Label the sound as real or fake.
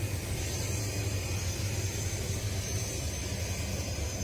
real